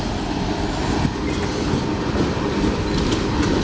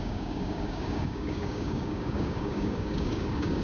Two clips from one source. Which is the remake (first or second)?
second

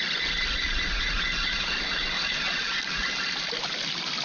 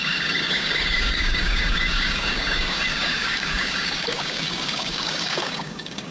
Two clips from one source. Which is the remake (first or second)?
second